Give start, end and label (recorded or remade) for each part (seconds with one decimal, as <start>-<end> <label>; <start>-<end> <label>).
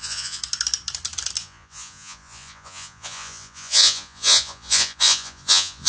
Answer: 0.0-0.4 remade; 0.4-1.4 recorded; 1.4-5.9 remade